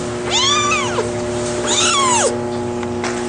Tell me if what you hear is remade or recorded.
recorded